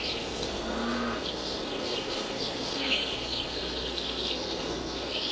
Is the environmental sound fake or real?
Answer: fake